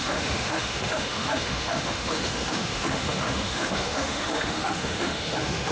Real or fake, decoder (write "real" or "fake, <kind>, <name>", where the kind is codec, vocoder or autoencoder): fake, autoencoder, DAC-VAE